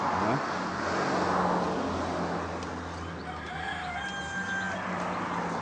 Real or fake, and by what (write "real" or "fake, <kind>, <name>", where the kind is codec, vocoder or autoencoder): real